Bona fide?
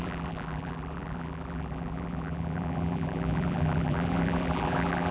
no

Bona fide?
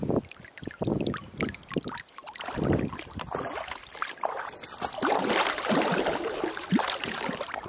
no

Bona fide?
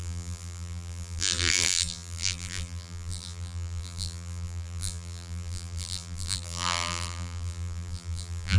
no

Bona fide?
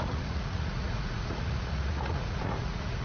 no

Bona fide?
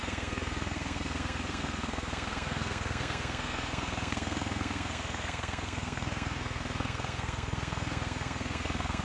no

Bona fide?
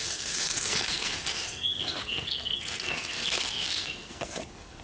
no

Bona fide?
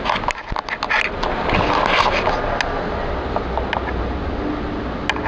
yes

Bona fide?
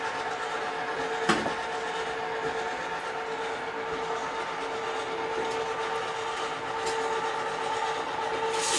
yes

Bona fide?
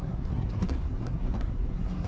no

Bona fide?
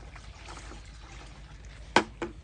yes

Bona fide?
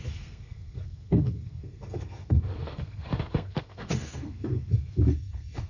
no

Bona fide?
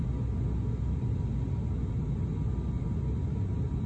yes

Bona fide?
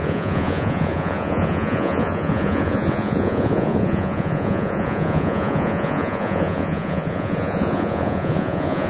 no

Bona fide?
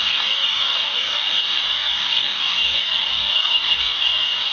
no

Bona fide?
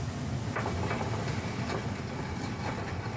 yes